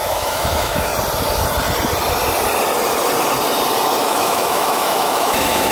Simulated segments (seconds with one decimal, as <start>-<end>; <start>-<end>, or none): 0.0-0.9; 4.0-5.7